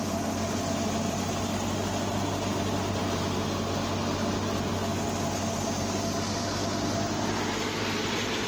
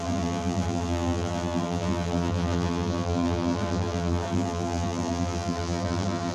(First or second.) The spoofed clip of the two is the second